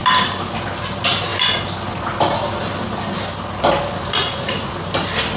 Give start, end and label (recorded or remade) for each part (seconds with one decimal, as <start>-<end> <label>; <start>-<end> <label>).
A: 0.0-4.2 recorded; 4.2-4.7 remade; 4.7-5.4 recorded